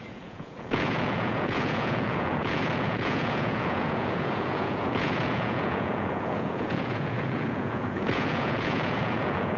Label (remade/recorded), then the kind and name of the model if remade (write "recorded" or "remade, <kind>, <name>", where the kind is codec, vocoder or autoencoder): remade, vocoder, Vocos